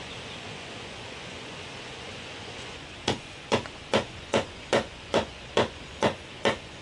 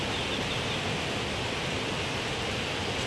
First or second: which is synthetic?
first